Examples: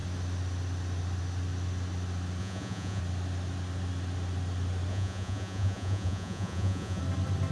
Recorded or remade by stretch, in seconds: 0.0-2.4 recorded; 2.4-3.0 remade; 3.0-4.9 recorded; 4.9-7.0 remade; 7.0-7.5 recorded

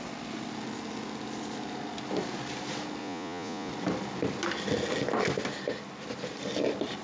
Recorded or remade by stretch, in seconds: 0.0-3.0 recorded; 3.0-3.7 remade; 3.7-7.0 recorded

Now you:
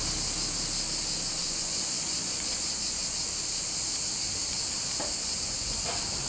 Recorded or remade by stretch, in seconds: 0.0-1.4 recorded; 1.4-3.1 remade; 3.1-5.2 recorded; 5.2-5.8 remade; 5.8-6.3 recorded